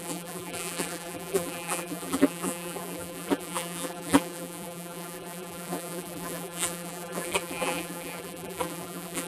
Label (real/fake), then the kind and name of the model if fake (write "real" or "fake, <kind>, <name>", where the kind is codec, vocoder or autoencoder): fake, vocoder, BigVGAN v2